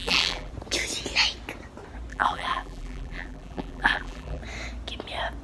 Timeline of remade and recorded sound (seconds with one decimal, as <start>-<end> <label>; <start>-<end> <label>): 0.0-0.5 remade; 0.5-2.1 recorded; 2.1-4.4 remade; 4.4-5.4 recorded